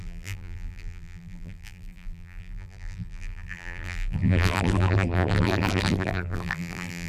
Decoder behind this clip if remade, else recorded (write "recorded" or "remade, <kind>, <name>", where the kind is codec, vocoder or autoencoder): remade, vocoder, BigVGAN v2